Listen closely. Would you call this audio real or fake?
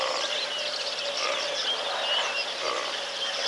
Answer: real